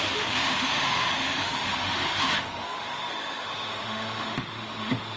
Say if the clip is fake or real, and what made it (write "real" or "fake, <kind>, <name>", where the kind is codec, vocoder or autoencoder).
fake, autoencoder, DAC-VAE